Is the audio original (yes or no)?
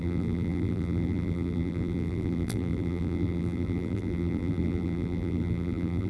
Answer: no